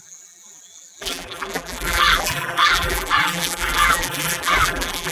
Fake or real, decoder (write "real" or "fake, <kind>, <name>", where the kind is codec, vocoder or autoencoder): fake, vocoder, BigVGAN v2